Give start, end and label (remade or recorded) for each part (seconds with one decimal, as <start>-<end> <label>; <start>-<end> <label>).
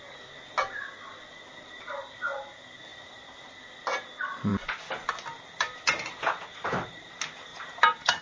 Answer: 0.0-4.5 recorded; 4.5-7.1 remade; 7.1-7.5 recorded; 7.5-8.2 remade